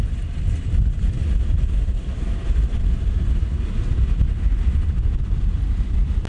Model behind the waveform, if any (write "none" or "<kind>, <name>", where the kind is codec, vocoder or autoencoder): none